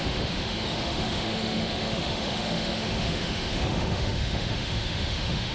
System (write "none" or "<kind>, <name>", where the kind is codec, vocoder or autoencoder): autoencoder, DAC-VAE